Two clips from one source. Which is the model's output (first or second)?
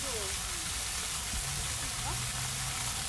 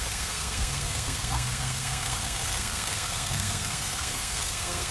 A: second